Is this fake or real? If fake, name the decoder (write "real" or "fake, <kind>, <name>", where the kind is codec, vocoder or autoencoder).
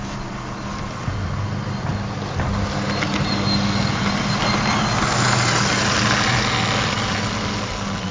real